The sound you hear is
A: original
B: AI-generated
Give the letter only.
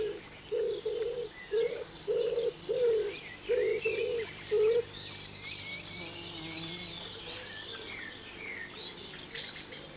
A